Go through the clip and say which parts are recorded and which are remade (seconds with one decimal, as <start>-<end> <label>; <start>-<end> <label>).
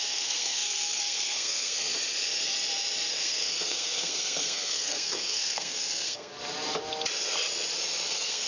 0.0-1.9 remade; 1.9-3.1 recorded; 3.1-6.3 remade; 6.3-8.1 recorded; 8.1-8.5 remade